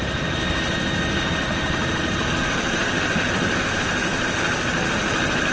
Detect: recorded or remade recorded